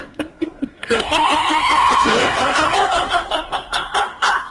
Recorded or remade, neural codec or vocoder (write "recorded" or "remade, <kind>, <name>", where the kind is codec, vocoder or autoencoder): remade, codec, SNAC